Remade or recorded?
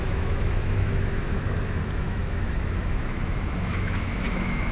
remade